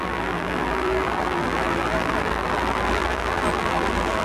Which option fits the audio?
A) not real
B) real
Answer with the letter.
A